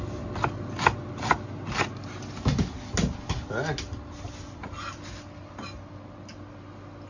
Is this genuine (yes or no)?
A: yes